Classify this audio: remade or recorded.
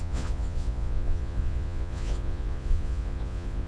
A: remade